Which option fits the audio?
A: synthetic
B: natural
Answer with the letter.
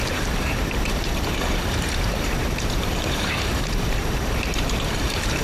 A